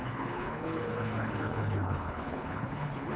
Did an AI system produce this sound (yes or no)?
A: yes